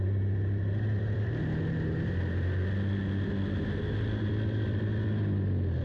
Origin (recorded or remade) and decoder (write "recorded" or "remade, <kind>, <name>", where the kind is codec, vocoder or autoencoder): recorded